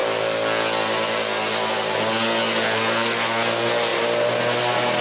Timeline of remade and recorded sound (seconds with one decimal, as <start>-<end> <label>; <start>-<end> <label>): 0.0-5.0 recorded